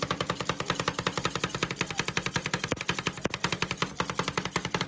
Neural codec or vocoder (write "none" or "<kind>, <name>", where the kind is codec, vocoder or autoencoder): vocoder, BigVGAN v2